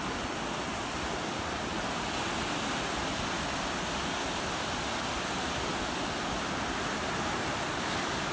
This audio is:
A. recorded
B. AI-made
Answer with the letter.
A